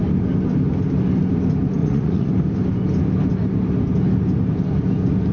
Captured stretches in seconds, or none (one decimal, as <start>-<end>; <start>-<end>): 0.0-1.8; 2.3-5.3